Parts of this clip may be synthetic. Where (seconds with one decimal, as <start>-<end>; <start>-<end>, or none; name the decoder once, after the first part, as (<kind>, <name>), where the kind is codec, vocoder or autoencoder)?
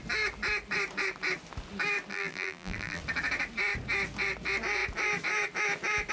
2.1-3.0 (vocoder, BigVGAN v2)